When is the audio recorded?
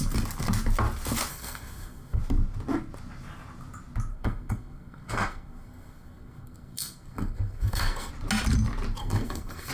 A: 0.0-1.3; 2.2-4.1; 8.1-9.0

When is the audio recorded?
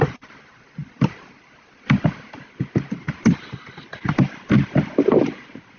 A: 0.0-5.8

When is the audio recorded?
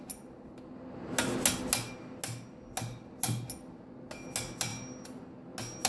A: 0.0-5.9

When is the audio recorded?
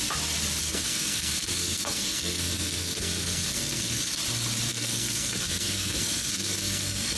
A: 0.0-0.6; 4.1-4.7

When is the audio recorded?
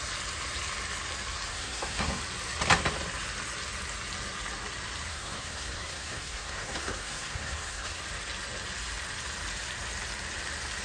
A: 0.0-1.5; 2.2-5.1; 8.0-10.8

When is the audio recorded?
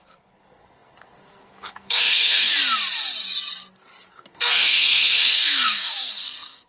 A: 2.5-4.1